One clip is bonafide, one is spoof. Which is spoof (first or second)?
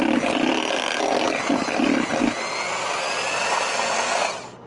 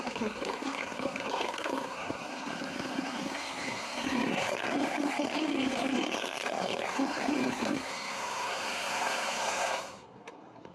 second